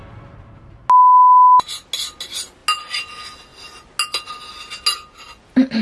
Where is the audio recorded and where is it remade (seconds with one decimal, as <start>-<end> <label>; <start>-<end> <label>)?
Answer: 0.0-5.8 recorded

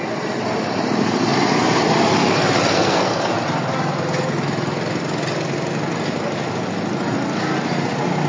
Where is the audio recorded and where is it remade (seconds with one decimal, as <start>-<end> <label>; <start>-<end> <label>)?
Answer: 0.0-2.7 recorded; 2.7-3.3 remade; 3.3-8.3 recorded

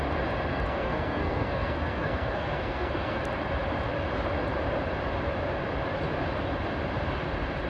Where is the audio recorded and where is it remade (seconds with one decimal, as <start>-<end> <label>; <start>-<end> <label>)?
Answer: 0.0-0.5 recorded; 0.5-3.2 remade; 3.2-7.7 recorded

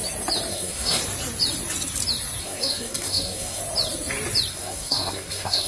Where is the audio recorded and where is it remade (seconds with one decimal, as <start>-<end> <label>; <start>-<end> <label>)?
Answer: 0.0-0.5 recorded; 0.5-1.0 remade; 1.0-2.4 recorded; 2.4-3.6 remade; 3.6-4.5 recorded; 4.5-5.7 remade

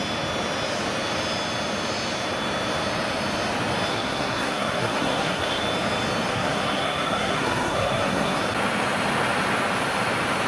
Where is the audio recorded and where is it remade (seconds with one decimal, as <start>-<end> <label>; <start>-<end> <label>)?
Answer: 0.0-3.9 recorded; 3.9-5.6 remade; 5.6-6.3 recorded; 6.3-8.4 remade; 8.4-10.5 recorded